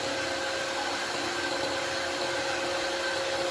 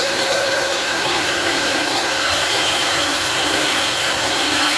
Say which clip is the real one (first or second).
first